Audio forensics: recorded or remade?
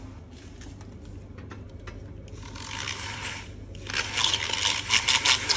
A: recorded